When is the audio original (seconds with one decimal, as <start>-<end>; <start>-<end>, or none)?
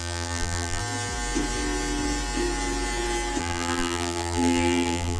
0.8-3.4